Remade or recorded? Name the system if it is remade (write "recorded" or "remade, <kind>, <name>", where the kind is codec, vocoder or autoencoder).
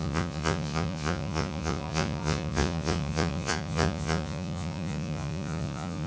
remade, vocoder, Vocos